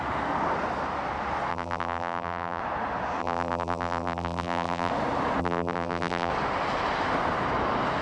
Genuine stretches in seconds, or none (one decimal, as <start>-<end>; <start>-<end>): 0.0-1.5; 2.6-3.2; 4.9-5.4; 6.3-8.0